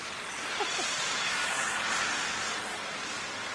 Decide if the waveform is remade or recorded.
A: recorded